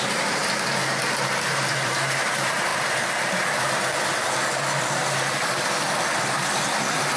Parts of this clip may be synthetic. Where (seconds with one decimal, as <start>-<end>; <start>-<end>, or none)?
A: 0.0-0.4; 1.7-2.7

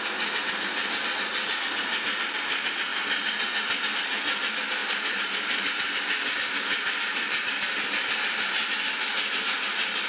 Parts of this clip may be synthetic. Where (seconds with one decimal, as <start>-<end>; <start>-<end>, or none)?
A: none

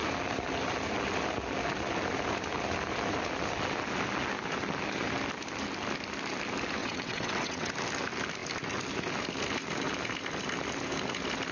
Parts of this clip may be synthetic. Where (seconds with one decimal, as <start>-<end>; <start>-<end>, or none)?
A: 6.8-7.7